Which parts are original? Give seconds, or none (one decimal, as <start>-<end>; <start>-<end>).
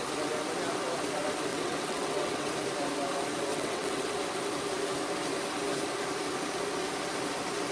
0.0-1.5; 2.5-3.5; 4.1-7.7